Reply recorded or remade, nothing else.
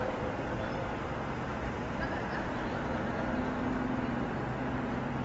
recorded